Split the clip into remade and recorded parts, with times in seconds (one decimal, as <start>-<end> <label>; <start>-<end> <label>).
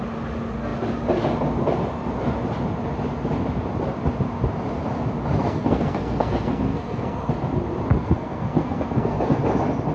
0.0-5.4 recorded; 5.4-7.3 remade; 7.3-7.9 recorded; 7.9-9.4 remade; 9.4-9.9 recorded